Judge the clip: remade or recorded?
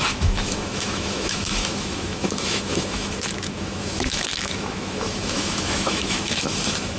remade